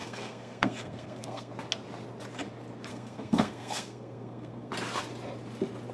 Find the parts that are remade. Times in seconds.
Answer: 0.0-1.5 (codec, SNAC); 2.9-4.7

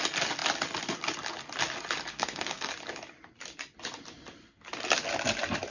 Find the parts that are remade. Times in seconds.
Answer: 2.1-2.7 (codec, SNAC)

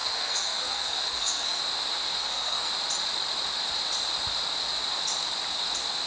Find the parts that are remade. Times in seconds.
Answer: 0.0-1.6 (codec, SNAC); 2.2-2.7

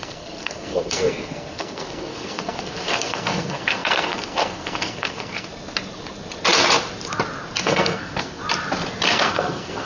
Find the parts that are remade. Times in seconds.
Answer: 0.0-5.5 (codec, SNAC); 7.6-8.4; 9.1-9.9

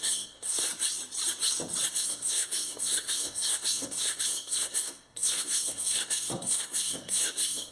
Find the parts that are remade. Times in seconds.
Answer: 0.0-0.7 (codec, SNAC); 1.9-7.7

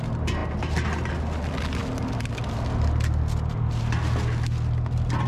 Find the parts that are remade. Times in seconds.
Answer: none

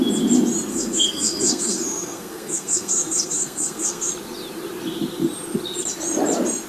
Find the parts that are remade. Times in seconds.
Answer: 0.7-4.1 (codec, SNAC)

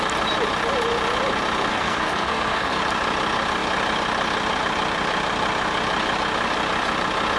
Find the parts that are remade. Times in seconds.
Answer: 1.7-2.8 (codec, SNAC)